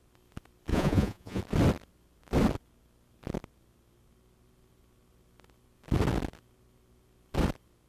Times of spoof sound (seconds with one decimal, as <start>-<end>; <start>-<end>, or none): 0.7-1.4